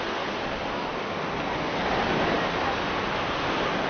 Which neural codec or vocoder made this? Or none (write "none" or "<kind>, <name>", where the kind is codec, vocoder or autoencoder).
none